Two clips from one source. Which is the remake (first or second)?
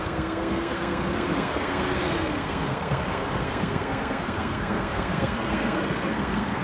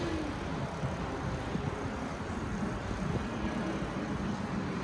first